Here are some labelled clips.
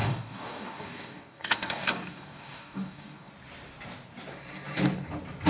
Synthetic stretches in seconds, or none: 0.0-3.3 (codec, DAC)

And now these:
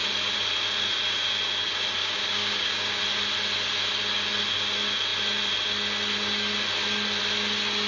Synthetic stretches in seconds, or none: 2.0-3.0 (codec, DAC)

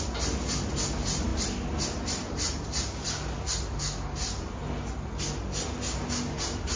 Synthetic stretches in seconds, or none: none

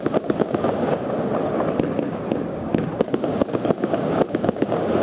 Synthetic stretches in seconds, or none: 0.0-1.3 (codec, DAC); 1.9-5.0

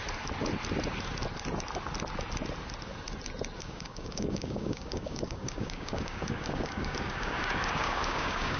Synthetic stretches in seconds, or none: 3.6-8.6 (codec, DAC)

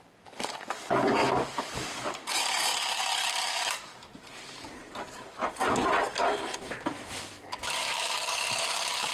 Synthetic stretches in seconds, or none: 0.0-4.1 (codec, DAC); 7.2-9.1